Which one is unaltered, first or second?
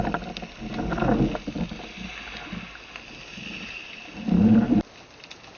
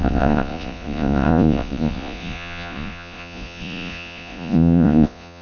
first